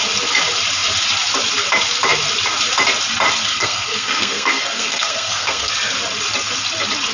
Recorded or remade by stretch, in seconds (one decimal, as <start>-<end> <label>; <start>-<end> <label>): 0.0-3.5 recorded; 3.5-5.7 remade; 5.7-7.1 recorded